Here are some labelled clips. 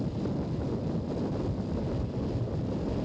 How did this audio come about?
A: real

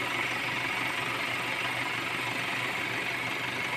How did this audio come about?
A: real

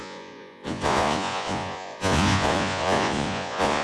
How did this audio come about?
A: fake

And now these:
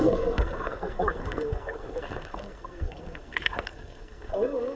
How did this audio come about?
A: fake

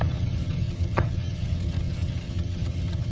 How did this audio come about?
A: fake